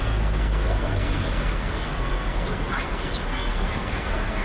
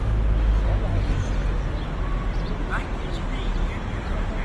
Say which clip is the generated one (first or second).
first